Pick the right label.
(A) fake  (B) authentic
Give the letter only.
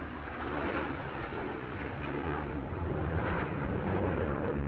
A